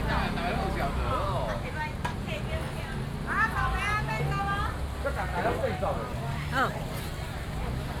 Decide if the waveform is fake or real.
real